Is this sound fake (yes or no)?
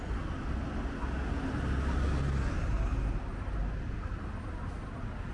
no